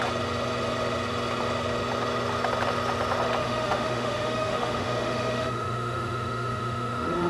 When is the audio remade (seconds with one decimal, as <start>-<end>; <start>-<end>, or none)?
3.4-7.3